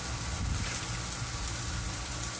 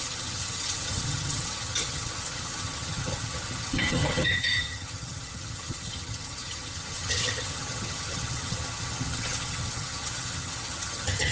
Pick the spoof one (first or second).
second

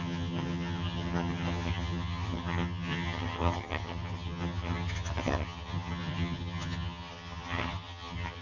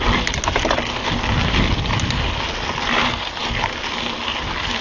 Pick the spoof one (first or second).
first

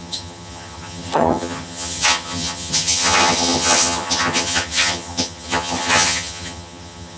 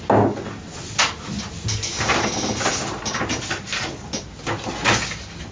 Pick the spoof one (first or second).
first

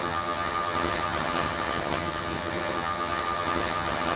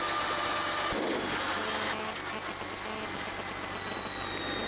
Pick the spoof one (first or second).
first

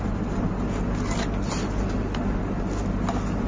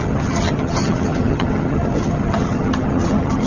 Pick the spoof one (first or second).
second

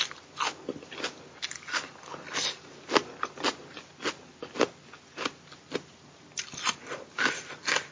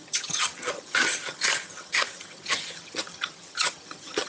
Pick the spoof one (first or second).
second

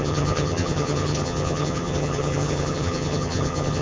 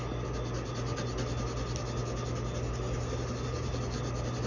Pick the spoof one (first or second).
first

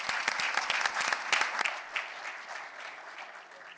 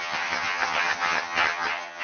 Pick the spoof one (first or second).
second